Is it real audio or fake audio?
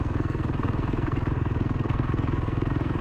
fake